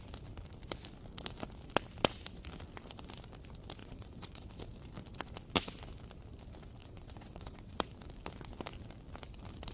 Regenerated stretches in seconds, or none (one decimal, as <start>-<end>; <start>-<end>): 3.8-4.5; 6.8-7.9